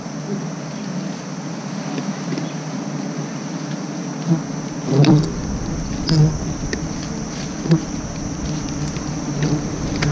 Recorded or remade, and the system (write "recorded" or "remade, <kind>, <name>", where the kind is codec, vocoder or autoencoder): recorded